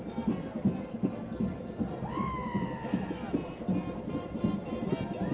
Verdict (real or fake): real